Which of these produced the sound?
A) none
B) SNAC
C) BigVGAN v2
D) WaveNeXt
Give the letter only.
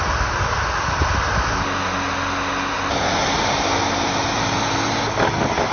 A